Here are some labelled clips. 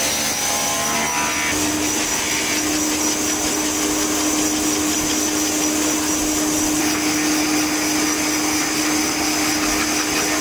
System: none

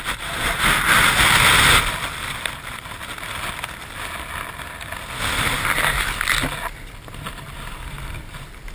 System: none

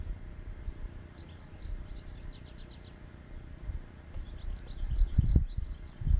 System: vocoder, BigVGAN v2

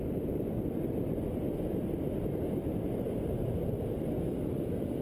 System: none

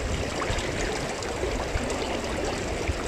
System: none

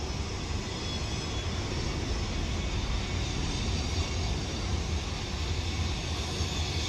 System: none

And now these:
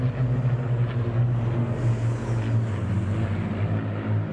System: none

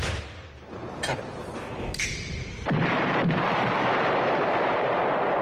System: vocoder, BigVGAN v2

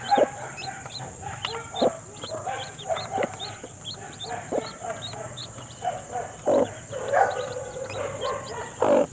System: vocoder, BigVGAN v2